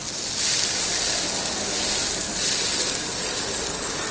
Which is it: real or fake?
real